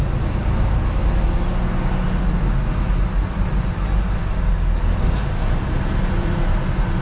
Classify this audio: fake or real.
real